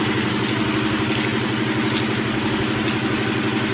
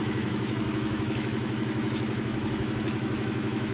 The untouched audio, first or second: first